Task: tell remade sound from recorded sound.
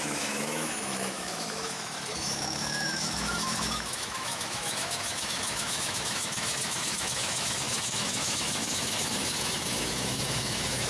remade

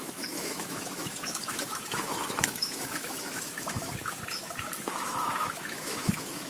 remade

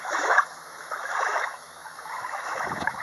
remade